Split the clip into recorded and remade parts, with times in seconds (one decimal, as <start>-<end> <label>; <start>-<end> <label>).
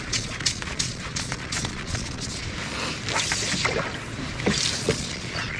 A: 0.0-2.4 remade; 2.4-4.8 recorded; 4.8-5.6 remade